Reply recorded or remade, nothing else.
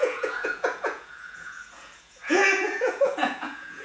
remade